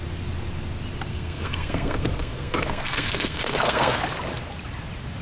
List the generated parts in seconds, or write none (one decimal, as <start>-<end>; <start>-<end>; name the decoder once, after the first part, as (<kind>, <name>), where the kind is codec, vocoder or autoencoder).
1.1-4.0 (codec, SNAC)